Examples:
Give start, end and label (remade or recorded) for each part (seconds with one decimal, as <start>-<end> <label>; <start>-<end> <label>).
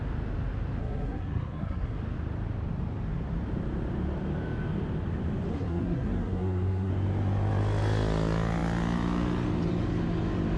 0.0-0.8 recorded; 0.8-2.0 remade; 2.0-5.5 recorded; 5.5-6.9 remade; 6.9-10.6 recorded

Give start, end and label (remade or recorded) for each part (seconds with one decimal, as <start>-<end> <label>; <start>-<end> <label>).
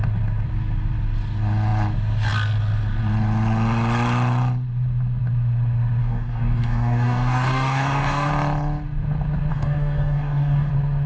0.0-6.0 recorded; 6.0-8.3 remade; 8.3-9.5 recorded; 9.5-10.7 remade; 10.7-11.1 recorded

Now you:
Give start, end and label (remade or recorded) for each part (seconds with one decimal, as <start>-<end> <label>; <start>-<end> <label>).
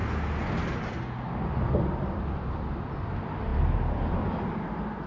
0.0-5.1 recorded